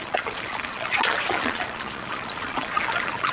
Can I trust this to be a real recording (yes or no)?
no